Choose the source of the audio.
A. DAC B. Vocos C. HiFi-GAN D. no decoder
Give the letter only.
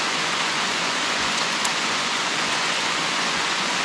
B